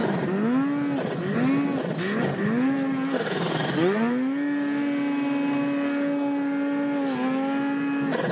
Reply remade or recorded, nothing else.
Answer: recorded